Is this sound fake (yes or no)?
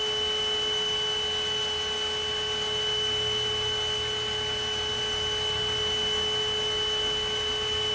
no